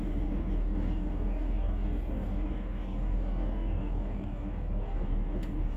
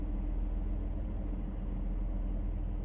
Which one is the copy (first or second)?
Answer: first